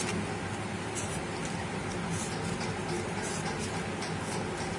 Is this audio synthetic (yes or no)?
no